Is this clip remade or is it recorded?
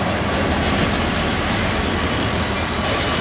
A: recorded